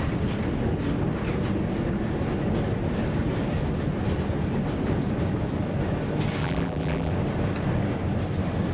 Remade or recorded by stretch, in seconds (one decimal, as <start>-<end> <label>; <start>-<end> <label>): 0.0-6.4 recorded; 6.4-7.1 remade; 7.1-8.7 recorded